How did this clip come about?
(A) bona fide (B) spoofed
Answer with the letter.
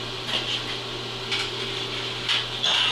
A